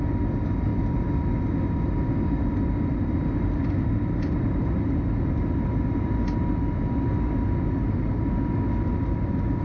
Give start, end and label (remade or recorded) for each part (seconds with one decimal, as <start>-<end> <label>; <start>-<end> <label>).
0.0-9.6 recorded